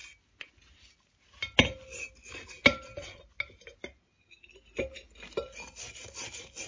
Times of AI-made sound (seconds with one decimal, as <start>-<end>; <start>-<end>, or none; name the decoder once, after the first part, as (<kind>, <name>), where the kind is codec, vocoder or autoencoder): none